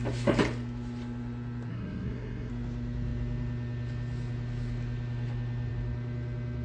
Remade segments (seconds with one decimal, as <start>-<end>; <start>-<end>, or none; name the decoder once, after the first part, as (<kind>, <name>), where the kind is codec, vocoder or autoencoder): 1.7-2.5 (codec, SNAC)